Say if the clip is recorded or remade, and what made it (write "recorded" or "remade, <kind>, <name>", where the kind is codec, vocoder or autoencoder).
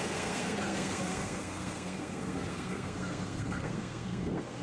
remade, codec, SNAC